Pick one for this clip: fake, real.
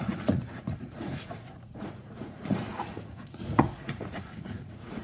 fake